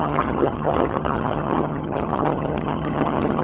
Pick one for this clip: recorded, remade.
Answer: remade